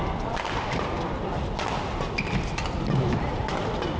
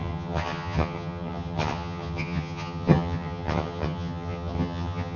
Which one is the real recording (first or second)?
first